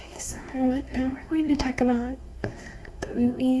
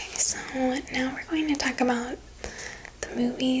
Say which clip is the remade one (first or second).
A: first